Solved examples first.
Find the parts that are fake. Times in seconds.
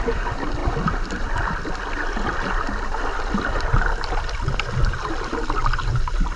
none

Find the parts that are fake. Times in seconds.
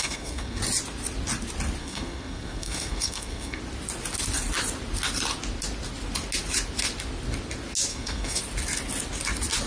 0.0-0.6 (codec, SNAC); 1.8-3.6; 7.9-8.4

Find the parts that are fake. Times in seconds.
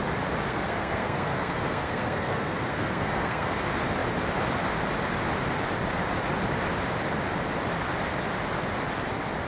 0.5-3.6 (codec, SNAC)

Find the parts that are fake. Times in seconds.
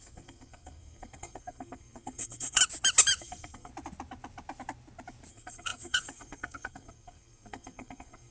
0.0-2.6 (codec, SNAC); 3.2-3.7; 5.3-8.3